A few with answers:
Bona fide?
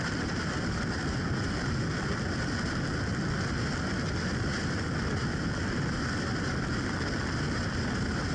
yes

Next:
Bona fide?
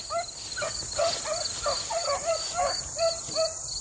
yes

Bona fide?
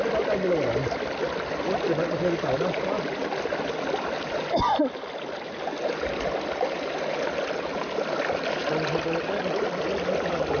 yes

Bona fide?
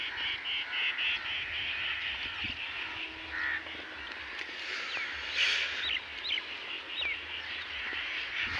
yes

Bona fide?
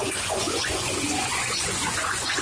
no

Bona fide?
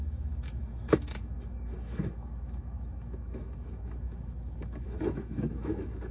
no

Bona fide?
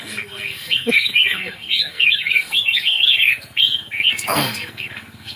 no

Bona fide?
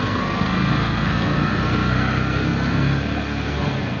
no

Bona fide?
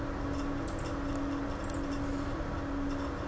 yes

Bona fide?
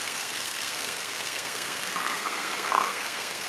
no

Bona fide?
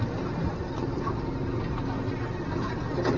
yes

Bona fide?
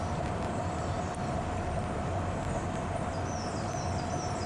yes